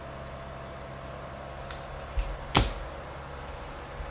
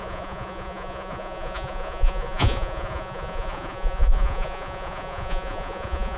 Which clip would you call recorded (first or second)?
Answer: first